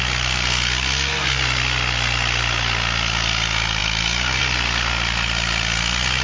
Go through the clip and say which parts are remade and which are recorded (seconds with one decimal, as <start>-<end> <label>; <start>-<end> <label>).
0.0-6.2 recorded